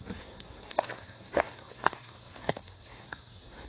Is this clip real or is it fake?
fake